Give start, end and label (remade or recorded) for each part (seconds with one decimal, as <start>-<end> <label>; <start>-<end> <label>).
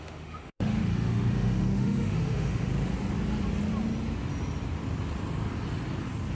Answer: 0.0-2.7 remade; 2.7-6.3 recorded